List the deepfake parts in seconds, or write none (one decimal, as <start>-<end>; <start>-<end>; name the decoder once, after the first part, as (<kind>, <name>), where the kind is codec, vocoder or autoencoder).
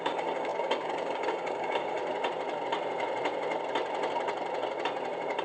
0.0-2.0 (codec, DAC)